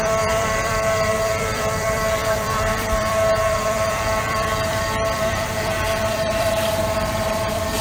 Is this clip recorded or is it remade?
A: remade